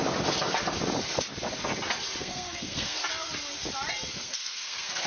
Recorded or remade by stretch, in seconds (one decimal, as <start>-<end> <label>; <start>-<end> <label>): 0.0-2.2 recorded; 2.2-3.0 remade; 3.0-4.1 recorded; 4.1-5.1 remade